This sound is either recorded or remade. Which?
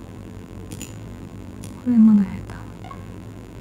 remade